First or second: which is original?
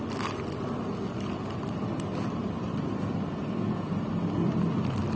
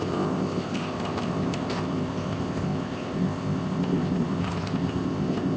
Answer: first